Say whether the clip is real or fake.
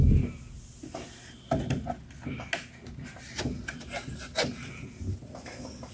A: real